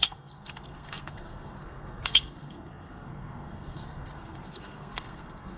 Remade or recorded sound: remade